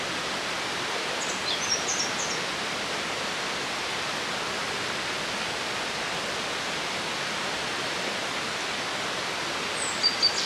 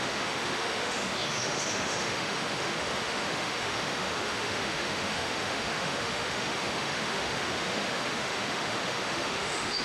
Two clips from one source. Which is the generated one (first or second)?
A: second